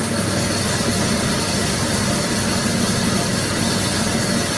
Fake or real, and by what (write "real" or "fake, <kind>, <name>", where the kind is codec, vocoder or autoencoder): real